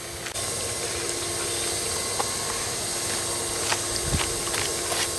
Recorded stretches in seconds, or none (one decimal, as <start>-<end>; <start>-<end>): 0.0-5.2

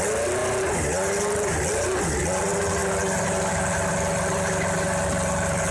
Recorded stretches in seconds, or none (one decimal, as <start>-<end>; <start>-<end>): 0.0-5.7

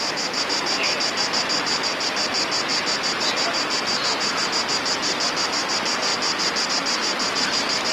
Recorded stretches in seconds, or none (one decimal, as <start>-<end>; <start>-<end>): 0.0-7.9

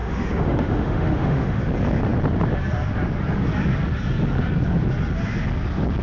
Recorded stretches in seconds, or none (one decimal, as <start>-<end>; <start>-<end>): 1.6-6.0

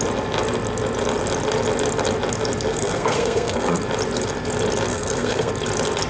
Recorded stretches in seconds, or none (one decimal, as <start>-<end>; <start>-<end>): 0.0-2.7; 3.8-4.9; 5.5-6.1

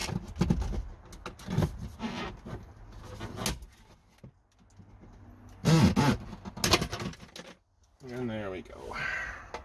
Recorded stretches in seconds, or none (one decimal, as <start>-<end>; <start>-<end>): 0.0-9.6

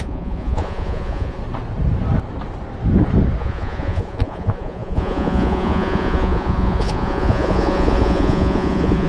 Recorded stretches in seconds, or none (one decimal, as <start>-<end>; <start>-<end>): 1.4-3.4

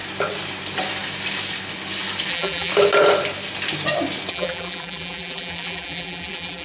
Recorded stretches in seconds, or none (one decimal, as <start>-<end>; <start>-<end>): 0.0-2.3; 2.7-4.3